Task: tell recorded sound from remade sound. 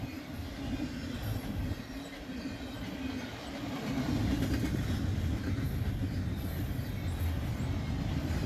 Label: recorded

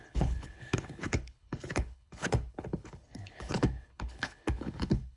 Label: remade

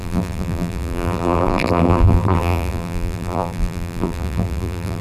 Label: remade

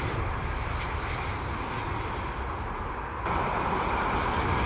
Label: recorded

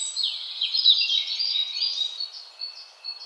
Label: remade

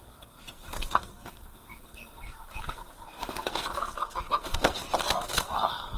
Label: remade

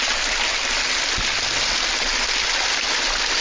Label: recorded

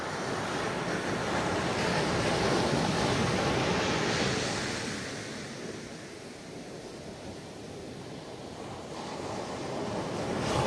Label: recorded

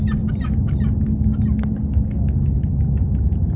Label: recorded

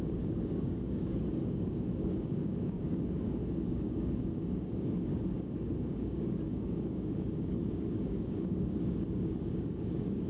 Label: remade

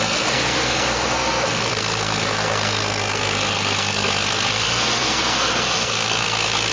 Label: remade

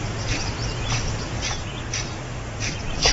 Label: recorded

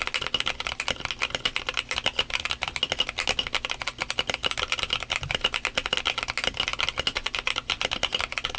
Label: recorded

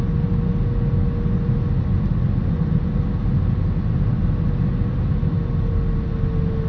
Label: recorded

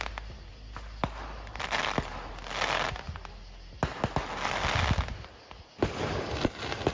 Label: recorded